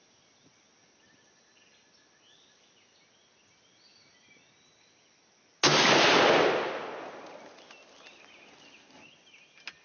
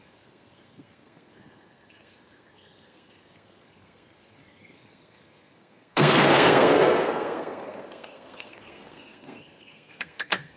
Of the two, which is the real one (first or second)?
first